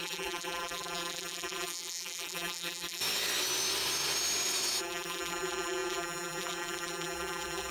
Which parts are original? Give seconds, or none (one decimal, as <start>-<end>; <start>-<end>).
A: 3.0-4.8